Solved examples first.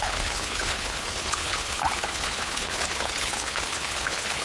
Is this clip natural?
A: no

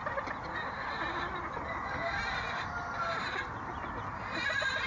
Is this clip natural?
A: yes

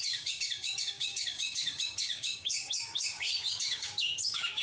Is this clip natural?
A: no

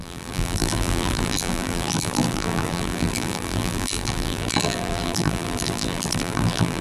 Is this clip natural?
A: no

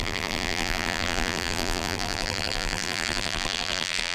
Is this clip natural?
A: no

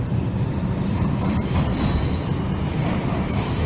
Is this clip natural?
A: no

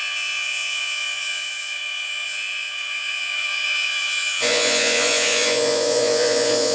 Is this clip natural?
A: no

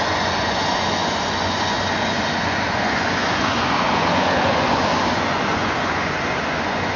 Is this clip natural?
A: no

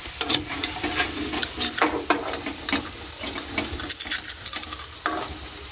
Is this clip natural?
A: no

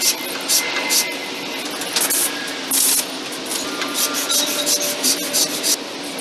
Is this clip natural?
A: yes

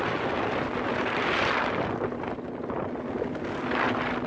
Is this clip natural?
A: yes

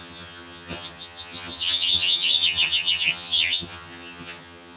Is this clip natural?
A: no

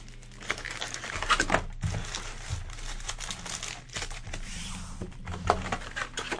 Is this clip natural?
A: yes